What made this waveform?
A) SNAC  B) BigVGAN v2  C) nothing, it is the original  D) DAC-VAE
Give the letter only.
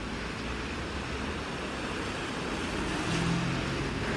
C